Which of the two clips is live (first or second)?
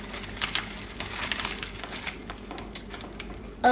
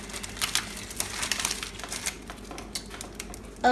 second